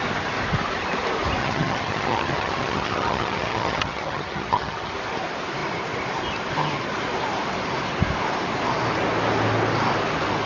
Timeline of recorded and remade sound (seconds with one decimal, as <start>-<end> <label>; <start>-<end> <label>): 0.0-1.4 recorded; 1.4-4.9 remade; 4.9-10.5 recorded

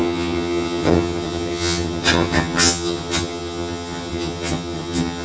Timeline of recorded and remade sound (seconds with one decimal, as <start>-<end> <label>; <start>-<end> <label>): 0.0-5.2 remade

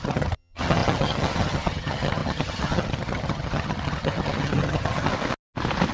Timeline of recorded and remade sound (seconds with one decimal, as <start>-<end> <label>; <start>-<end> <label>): 0.0-5.1 remade; 5.1-5.9 recorded

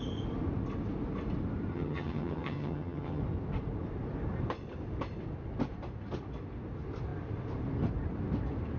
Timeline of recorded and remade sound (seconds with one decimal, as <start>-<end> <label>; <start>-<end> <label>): 0.0-1.7 recorded; 1.7-3.2 remade; 3.2-8.8 recorded